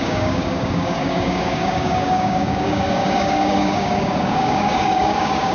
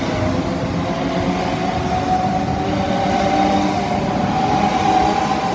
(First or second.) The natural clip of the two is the second